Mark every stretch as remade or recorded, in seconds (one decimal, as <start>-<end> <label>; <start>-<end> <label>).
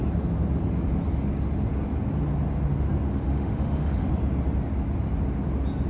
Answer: 0.0-3.1 recorded; 3.1-4.1 remade; 4.1-5.9 recorded